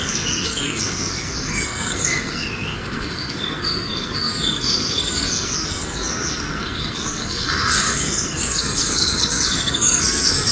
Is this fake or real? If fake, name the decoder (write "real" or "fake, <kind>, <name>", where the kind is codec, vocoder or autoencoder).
fake, codec, SNAC